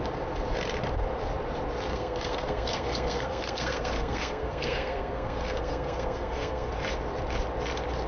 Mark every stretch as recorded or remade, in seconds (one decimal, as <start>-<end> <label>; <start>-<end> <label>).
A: 0.0-1.9 recorded; 1.9-6.7 remade; 6.7-8.1 recorded